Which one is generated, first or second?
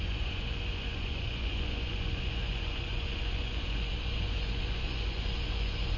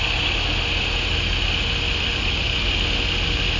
first